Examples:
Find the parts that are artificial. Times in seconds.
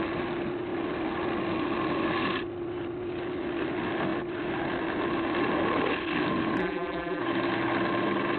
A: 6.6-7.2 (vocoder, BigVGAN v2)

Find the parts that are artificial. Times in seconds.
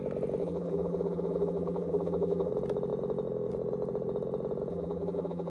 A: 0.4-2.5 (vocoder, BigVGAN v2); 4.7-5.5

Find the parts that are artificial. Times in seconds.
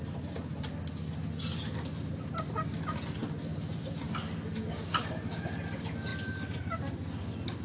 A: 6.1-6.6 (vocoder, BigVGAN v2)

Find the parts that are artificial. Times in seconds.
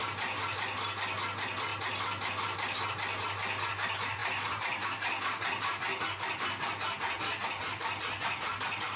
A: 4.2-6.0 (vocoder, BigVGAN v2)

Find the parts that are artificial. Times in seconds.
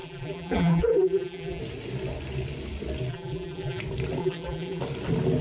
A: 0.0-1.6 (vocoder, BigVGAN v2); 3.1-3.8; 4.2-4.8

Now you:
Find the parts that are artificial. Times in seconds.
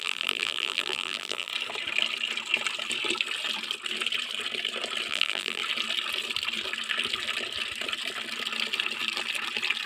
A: 0.0-1.5 (vocoder, BigVGAN v2); 5.1-5.6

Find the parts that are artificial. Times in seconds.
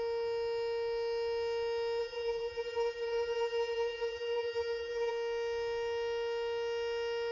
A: 2.0-5.1 (vocoder, BigVGAN v2)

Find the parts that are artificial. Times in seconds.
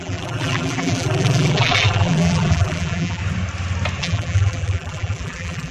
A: 0.0-3.2 (vocoder, BigVGAN v2); 4.0-5.7